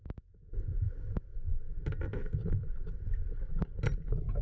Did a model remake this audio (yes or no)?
no